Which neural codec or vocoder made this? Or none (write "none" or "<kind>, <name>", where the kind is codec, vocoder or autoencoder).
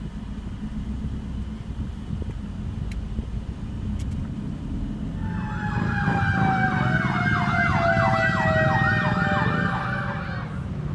none